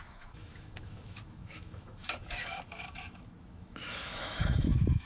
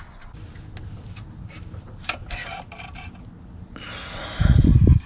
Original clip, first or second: second